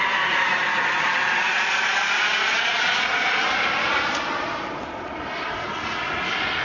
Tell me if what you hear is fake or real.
real